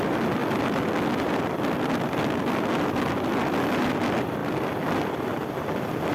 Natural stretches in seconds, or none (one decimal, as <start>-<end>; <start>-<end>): 0.0-6.1